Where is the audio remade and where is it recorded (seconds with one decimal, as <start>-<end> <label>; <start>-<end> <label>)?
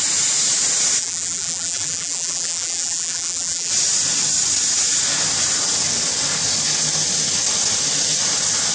0.0-1.0 recorded; 1.0-3.7 remade; 3.7-8.7 recorded